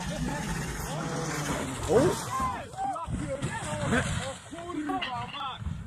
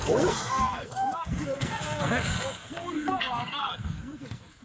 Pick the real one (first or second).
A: first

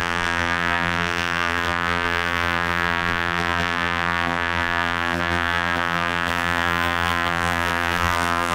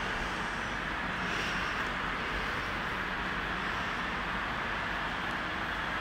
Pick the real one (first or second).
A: second